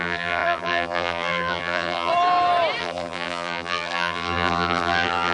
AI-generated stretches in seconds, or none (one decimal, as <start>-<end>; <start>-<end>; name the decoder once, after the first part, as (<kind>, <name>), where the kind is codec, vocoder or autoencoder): 0.0-2.1 (vocoder, BigVGAN v2); 2.8-5.3